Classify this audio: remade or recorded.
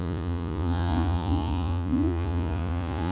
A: remade